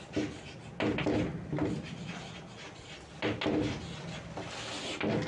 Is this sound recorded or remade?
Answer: recorded